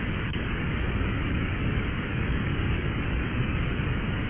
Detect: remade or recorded remade